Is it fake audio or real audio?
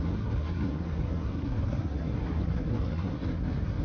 fake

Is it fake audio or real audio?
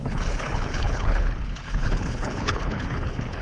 fake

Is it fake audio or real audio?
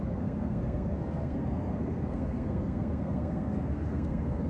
fake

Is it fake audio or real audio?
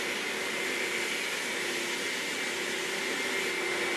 real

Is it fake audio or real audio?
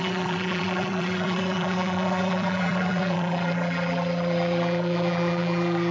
fake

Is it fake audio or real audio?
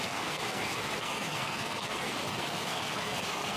fake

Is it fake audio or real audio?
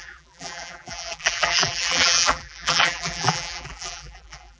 fake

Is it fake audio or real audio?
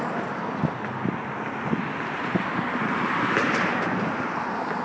real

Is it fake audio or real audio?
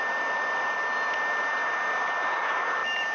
real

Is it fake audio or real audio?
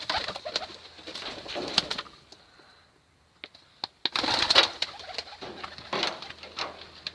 real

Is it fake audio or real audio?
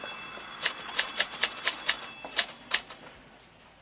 fake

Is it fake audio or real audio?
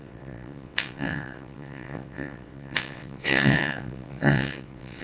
fake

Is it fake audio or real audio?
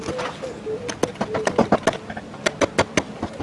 real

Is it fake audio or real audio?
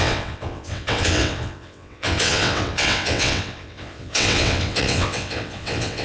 fake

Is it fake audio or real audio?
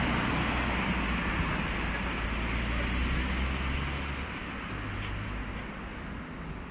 real